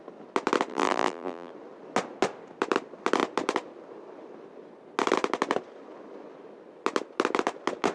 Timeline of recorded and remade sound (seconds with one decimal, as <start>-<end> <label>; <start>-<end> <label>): 0.0-0.7 recorded; 0.7-1.5 remade; 1.5-7.9 recorded